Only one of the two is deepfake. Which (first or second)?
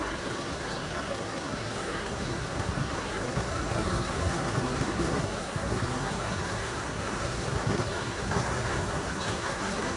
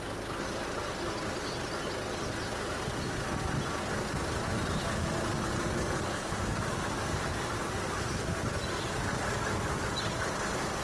first